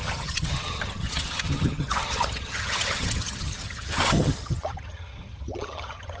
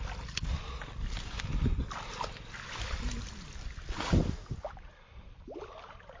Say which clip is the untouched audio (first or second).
second